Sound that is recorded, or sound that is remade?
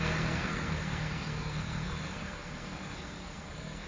remade